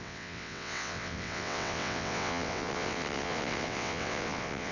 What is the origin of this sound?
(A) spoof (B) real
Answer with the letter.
A